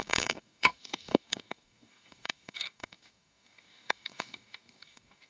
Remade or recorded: remade